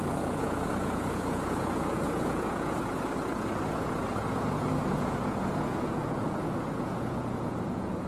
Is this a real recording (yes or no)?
no